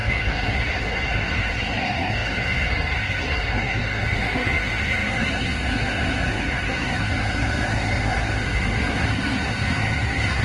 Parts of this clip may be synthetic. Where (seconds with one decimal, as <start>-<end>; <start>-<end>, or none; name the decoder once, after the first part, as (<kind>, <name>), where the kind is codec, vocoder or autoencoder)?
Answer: 0.0-10.4 (codec, SNAC)